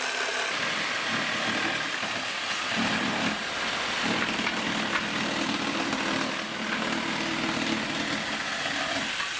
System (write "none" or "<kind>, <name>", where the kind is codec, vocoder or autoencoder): none